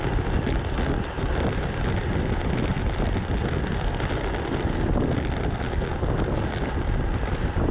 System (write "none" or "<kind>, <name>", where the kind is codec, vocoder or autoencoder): none